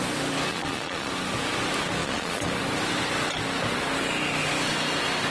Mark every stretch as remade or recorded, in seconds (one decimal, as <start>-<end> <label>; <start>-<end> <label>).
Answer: 0.0-0.5 recorded; 0.5-1.1 remade; 1.1-2.0 recorded; 2.0-2.5 remade; 2.5-5.3 recorded